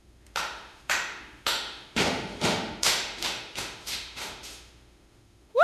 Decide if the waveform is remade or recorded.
remade